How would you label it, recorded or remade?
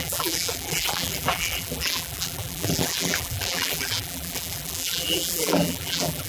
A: remade